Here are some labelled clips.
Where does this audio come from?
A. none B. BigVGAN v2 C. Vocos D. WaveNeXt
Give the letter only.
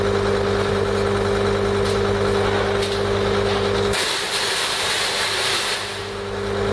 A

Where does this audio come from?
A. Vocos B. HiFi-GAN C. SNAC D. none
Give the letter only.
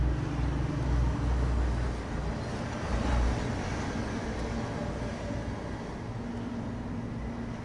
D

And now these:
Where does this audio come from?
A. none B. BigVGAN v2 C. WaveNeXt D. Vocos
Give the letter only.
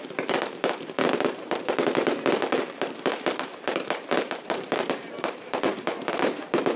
B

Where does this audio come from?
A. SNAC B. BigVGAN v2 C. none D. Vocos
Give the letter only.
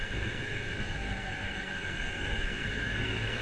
A